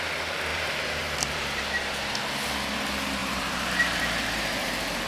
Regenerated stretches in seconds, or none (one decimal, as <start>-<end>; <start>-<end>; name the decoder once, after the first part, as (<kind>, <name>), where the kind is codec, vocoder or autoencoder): 0.5-1.6 (vocoder, BigVGAN v2); 3.2-4.0